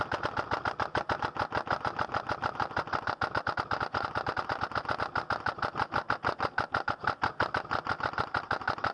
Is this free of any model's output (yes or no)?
yes